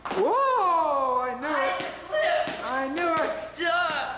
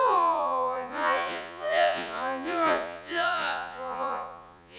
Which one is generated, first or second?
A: second